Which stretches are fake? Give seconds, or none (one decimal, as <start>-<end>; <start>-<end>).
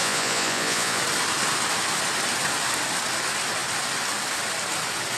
0.0-1.0